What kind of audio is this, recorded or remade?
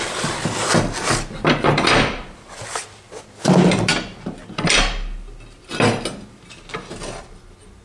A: recorded